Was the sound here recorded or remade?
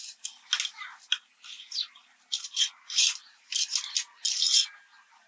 recorded